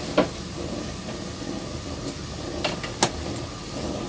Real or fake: real